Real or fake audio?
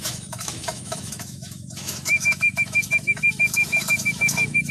fake